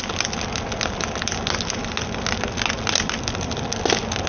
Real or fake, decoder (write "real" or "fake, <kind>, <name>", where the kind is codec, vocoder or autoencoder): real